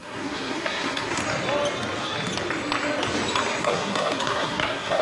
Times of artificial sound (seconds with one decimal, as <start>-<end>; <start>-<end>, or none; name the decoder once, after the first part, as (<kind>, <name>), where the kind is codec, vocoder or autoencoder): 0.0-1.2 (codec, SNAC); 3.6-5.0